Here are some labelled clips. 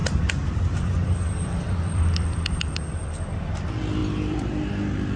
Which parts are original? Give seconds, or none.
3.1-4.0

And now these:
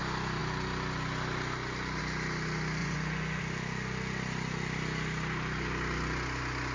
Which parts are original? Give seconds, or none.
0.0-2.8; 3.4-6.7

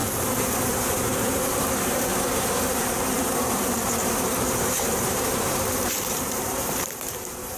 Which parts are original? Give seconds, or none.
0.0-0.6; 2.1-2.7